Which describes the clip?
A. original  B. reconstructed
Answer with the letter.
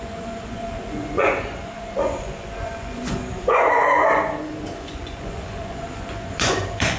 B